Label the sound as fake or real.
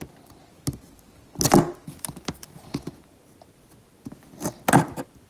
real